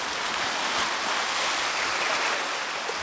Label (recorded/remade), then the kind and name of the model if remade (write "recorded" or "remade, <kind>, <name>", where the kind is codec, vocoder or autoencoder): recorded